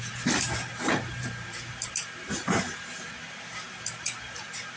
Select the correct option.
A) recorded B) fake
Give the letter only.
B